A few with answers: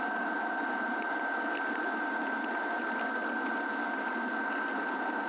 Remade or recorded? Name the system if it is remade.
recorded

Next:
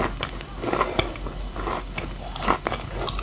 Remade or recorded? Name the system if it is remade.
recorded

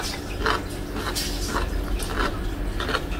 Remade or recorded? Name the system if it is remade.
recorded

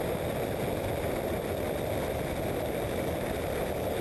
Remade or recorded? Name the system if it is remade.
recorded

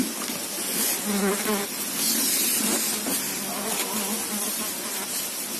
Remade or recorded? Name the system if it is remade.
recorded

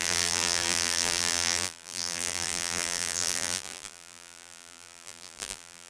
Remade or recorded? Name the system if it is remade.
remade, vocoder, BigVGAN v2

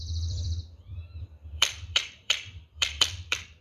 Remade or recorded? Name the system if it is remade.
remade, vocoder, BigVGAN v2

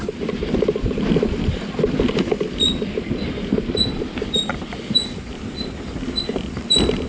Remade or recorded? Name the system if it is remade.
recorded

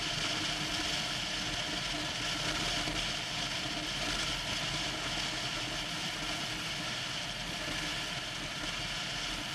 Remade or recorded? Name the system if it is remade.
recorded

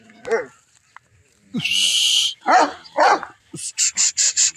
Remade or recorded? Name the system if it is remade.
recorded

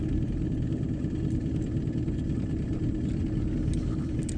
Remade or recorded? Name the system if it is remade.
recorded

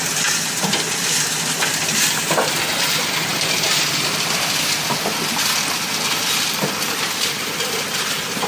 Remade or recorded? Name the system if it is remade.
remade, vocoder, BigVGAN v2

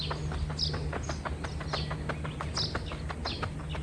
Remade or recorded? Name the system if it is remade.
recorded